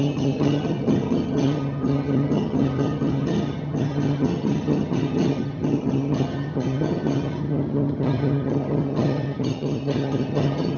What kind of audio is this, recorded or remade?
remade